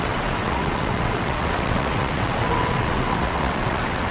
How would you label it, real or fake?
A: fake